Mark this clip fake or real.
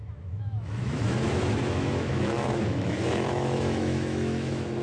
fake